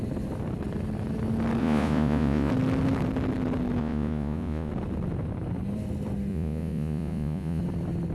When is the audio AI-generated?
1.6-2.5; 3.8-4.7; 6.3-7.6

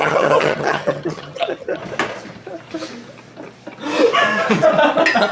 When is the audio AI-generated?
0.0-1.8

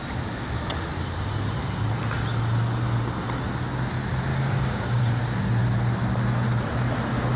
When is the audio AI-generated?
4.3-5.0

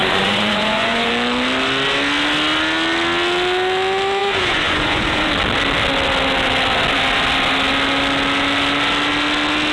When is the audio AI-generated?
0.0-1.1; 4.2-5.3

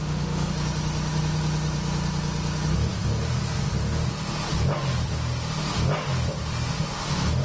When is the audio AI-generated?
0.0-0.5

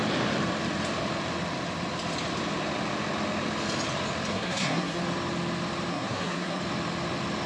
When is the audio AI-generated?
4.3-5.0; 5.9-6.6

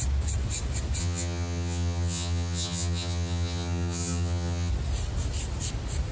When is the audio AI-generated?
1.0-4.7

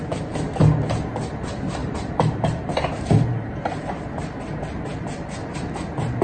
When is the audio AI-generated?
1.8-2.9